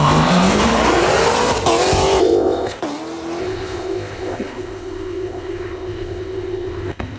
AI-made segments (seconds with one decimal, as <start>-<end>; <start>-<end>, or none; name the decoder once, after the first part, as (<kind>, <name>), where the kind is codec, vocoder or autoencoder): 0.0-0.6 (codec, ZipCodec); 2.2-2.8; 3.4-7.2